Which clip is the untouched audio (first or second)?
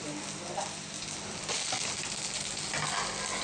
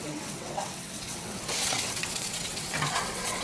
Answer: first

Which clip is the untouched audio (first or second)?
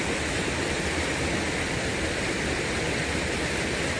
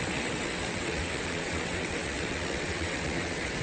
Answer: first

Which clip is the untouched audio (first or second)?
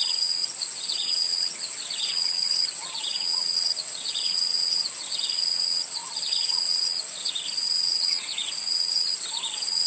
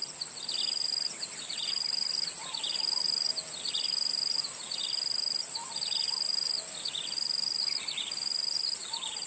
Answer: second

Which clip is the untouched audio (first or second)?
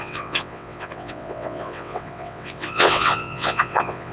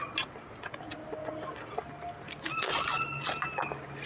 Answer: second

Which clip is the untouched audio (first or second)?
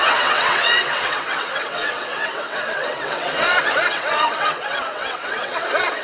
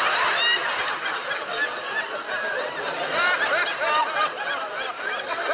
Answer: second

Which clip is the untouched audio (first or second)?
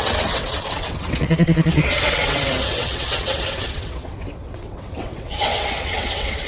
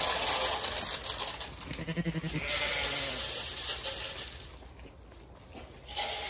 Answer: second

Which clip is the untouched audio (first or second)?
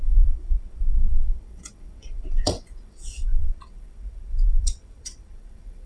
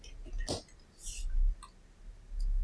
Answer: second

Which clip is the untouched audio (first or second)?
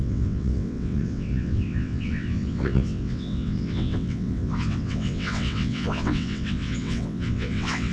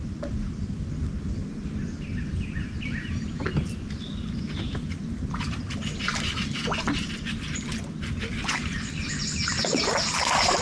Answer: second